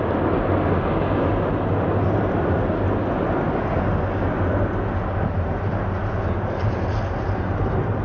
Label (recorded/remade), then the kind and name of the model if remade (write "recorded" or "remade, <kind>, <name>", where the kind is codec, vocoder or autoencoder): recorded